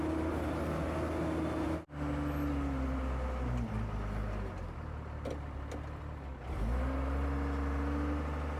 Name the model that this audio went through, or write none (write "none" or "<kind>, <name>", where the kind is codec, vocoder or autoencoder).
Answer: none